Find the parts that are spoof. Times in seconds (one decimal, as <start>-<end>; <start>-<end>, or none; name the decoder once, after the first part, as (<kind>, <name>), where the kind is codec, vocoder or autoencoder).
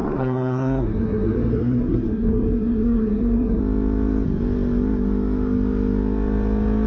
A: 0.0-3.6 (codec, SNAC)